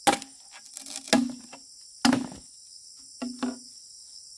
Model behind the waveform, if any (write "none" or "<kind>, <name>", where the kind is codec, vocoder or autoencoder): none